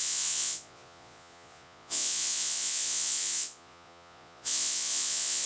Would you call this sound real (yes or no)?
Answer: no